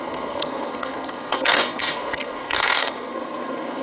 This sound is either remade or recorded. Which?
remade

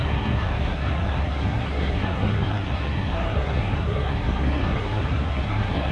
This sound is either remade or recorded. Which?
remade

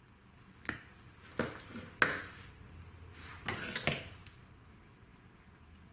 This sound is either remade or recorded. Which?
recorded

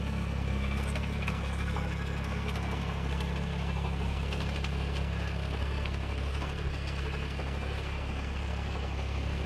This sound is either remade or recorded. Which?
remade